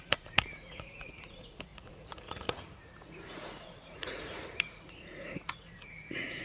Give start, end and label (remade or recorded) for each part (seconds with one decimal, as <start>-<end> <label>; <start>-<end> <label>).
0.0-6.4 remade